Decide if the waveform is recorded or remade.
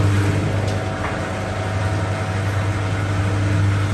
recorded